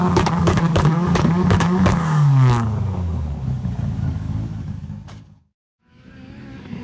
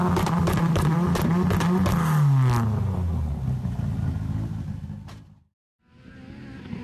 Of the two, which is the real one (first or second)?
second